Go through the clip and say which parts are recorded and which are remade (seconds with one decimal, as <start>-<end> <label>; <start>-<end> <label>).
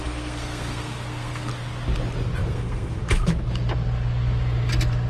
0.0-1.5 remade; 1.5-2.5 recorded; 2.5-3.0 remade; 3.0-5.1 recorded